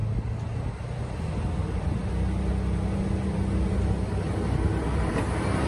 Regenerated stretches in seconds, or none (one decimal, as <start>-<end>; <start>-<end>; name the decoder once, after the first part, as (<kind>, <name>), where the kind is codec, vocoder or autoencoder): none